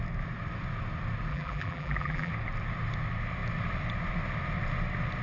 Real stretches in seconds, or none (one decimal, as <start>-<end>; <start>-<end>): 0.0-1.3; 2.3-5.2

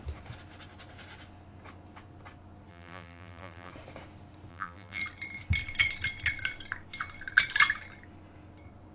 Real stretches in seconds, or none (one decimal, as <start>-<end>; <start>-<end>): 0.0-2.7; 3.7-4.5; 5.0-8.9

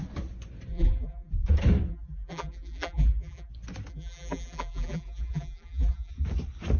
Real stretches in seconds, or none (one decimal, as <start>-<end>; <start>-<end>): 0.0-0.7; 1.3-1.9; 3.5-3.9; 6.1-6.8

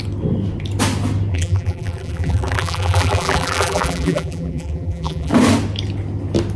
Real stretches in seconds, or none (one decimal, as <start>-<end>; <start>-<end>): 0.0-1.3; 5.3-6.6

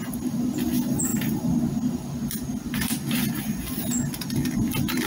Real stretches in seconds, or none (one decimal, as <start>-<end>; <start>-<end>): 0.0-5.1